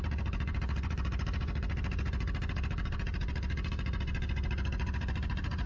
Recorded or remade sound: remade